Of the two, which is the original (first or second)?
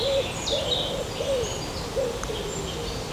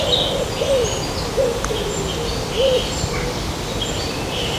second